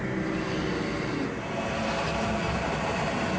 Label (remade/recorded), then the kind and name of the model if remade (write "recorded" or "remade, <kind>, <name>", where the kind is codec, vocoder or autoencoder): recorded